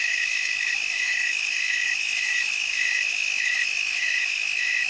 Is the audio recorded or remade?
remade